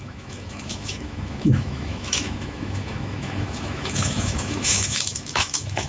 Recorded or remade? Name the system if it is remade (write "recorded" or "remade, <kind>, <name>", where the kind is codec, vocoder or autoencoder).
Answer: remade, autoencoder, DAC-VAE